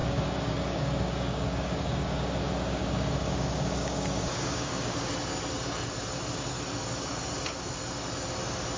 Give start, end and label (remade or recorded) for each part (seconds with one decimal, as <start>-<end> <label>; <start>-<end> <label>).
0.0-2.3 remade; 2.3-2.8 recorded; 2.8-5.1 remade; 5.1-8.8 recorded